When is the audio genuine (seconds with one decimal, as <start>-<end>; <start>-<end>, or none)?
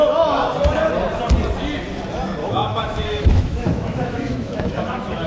0.0-2.4